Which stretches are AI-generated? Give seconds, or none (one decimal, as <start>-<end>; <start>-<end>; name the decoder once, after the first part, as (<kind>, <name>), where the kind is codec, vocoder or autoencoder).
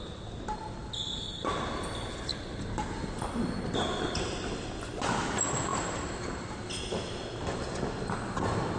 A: 2.3-4.1 (vocoder, BigVGAN v2); 5.7-6.5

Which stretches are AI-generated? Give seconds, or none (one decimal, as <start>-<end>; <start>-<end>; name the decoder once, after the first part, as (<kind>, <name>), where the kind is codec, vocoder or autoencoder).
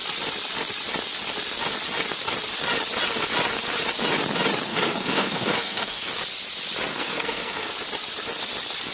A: 4.7-6.1 (codec, SNAC); 6.9-7.7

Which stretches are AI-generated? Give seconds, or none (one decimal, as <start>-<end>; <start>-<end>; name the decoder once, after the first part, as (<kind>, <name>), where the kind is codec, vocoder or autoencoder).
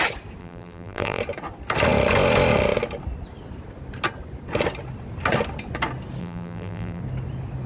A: 0.4-1.2 (vocoder, BigVGAN v2); 6.2-7.0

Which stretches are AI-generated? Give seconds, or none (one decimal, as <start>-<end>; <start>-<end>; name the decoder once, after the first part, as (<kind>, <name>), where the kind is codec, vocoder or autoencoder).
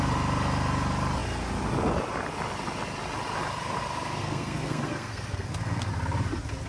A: 4.2-5.9 (codec, SNAC)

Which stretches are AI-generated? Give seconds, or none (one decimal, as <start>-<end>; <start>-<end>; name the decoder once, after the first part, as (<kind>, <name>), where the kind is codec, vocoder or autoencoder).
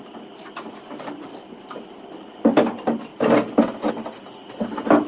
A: none